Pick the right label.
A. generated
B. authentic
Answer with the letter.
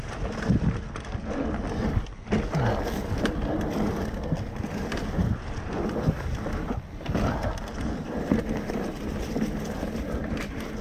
B